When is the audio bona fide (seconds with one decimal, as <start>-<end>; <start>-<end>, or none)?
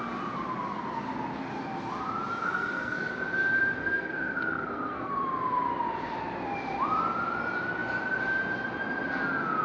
0.0-2.4; 3.1-3.8; 5.1-9.6